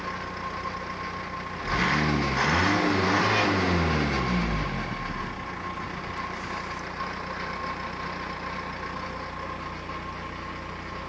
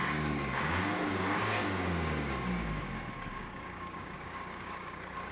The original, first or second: first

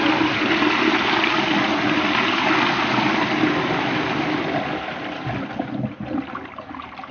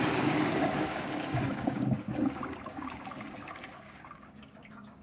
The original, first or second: first